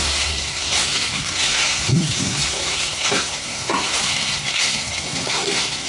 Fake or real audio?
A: fake